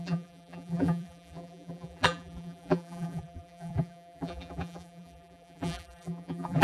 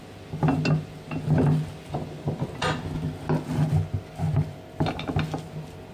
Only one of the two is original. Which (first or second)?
second